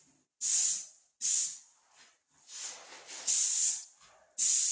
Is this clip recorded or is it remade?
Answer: recorded